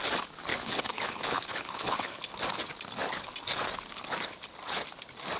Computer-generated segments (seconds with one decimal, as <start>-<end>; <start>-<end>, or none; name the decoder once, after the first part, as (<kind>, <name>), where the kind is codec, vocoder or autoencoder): 0.5-2.2 (codec, HILCodec)